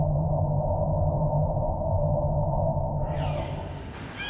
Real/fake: real